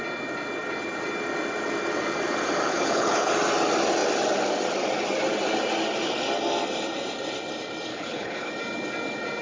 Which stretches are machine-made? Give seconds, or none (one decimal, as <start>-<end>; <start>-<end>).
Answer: 2.7-3.3; 7.9-8.5